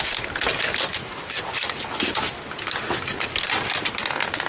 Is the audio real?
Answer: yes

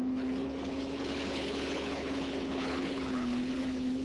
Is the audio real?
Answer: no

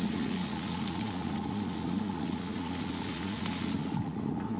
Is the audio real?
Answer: no